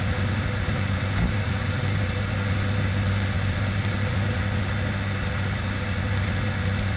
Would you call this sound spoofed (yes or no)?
no